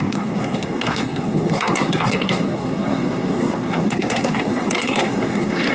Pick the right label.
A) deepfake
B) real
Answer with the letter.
A